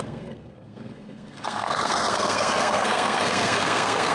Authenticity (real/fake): fake